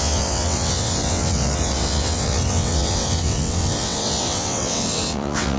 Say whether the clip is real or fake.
fake